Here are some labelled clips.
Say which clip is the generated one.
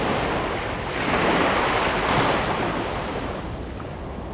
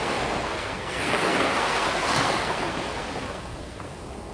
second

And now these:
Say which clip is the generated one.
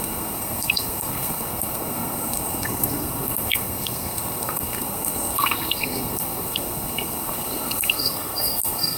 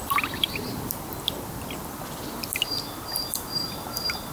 first